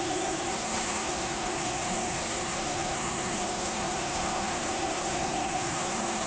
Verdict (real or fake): fake